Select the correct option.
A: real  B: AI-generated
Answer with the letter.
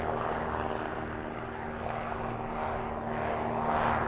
A